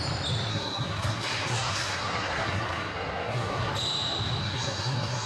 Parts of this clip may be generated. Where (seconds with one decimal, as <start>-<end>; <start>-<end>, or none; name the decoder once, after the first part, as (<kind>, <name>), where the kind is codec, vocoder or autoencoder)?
0.5-3.7 (codec, SNAC); 4.4-5.3